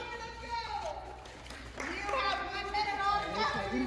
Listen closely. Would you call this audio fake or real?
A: fake